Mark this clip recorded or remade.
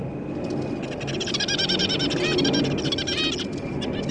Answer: recorded